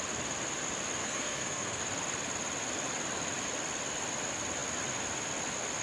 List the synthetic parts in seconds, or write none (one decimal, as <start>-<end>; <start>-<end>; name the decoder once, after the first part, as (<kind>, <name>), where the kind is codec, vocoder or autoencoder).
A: 1.0-1.8 (codec, SNAC)